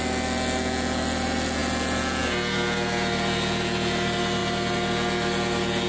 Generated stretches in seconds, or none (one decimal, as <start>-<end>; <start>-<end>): none